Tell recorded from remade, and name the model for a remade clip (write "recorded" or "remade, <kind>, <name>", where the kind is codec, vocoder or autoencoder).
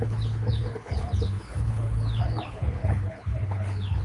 remade, codec, HILCodec